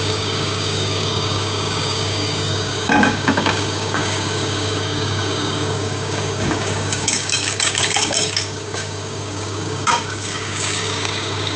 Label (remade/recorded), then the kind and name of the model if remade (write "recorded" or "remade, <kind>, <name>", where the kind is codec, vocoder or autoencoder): remade, codec, DAC